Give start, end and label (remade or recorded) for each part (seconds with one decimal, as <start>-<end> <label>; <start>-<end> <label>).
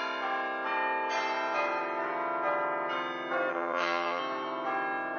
0.0-3.5 recorded; 3.5-4.2 remade; 4.2-5.2 recorded